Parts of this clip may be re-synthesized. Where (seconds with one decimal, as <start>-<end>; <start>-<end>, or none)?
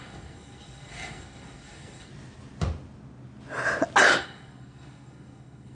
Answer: 0.0-2.1; 4.2-5.7